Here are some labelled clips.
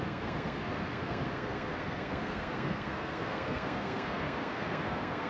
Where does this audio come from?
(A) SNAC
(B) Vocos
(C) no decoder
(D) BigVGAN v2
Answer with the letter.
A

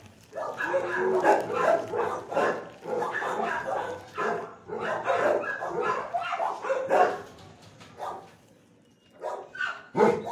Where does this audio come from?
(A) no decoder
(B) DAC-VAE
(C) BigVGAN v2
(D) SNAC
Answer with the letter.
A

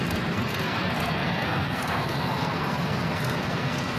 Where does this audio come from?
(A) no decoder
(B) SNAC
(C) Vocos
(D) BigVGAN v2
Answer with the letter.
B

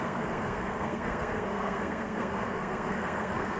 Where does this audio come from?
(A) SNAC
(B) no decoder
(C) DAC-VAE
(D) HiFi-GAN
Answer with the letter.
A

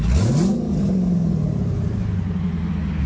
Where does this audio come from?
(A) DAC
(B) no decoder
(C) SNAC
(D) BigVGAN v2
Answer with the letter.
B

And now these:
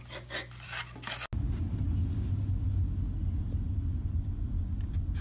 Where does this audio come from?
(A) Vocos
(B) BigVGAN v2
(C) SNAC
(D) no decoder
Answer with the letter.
D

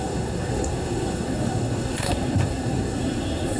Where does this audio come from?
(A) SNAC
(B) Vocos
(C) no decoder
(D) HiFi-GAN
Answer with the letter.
A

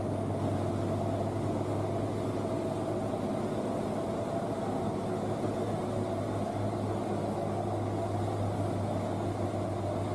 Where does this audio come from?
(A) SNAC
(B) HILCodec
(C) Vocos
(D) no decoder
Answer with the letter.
D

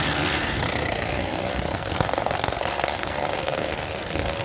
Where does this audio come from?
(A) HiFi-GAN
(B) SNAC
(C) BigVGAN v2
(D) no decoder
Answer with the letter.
B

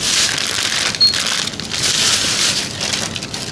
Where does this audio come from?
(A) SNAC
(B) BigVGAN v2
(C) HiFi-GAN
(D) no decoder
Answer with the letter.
D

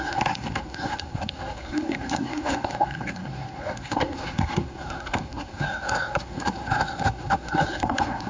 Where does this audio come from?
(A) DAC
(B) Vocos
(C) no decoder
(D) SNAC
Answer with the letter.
D